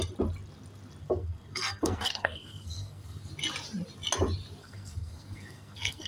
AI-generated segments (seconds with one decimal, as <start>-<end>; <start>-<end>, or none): 1.0-3.3; 4.6-6.1